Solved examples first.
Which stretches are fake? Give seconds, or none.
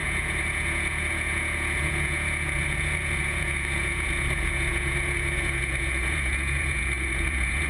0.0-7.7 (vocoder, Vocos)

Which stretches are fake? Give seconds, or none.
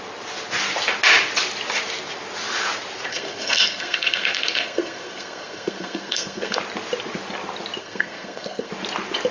3.1-6.6 (codec, SNAC); 7.8-8.7